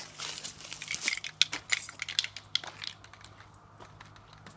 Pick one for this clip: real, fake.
real